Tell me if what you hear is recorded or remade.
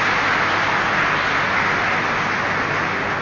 recorded